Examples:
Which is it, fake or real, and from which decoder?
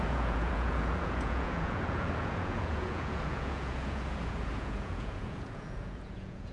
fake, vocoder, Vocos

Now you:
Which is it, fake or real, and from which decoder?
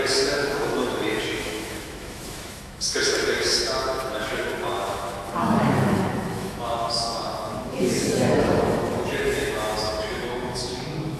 fake, autoencoder, DAC-VAE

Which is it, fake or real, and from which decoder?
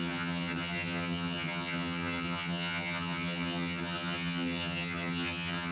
fake, vocoder, HiFi-GAN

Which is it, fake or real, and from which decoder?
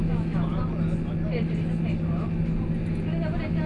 real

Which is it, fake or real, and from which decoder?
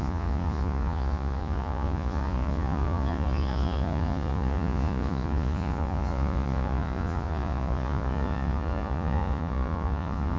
fake, vocoder, Vocos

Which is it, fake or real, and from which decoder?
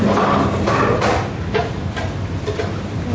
real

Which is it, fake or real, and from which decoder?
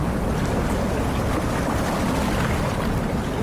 real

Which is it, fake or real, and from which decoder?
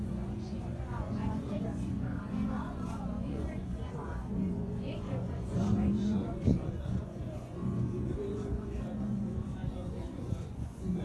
fake, vocoder, Vocos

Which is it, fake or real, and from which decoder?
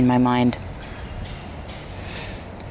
real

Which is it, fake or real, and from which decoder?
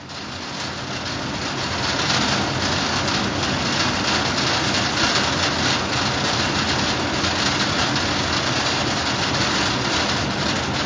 real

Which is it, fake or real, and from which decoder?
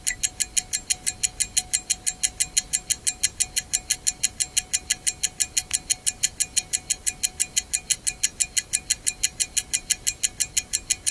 real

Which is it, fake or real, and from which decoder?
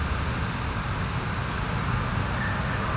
real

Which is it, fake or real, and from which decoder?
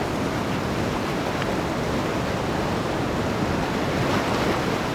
real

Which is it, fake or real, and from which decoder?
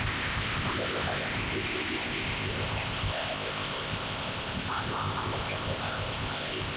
fake, codec, ZipCodec